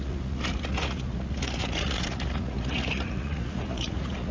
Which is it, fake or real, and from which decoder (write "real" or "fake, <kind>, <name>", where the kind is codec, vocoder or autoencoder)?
fake, vocoder, Vocos